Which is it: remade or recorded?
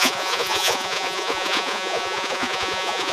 remade